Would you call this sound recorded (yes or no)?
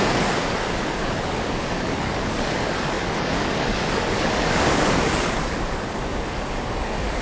no